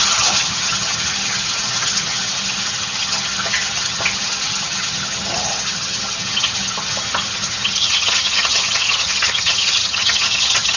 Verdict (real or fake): fake